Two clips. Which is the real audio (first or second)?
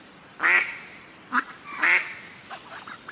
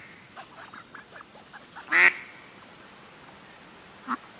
second